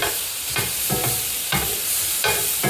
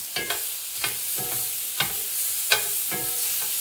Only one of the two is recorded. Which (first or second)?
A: second